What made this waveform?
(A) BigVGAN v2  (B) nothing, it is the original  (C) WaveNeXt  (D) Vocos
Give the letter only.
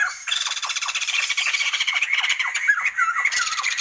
A